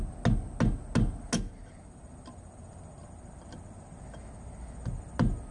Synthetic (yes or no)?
no